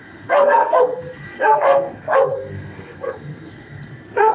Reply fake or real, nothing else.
fake